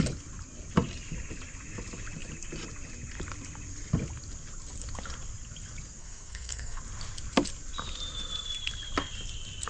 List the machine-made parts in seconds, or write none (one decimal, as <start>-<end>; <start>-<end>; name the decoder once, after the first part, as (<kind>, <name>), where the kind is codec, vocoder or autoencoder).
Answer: 6.0-6.8 (codec, SNAC)